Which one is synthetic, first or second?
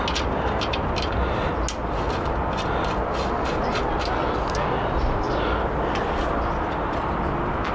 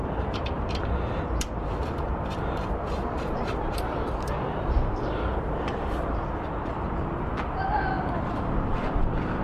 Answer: second